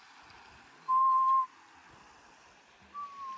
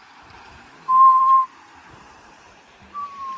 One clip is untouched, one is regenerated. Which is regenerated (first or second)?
second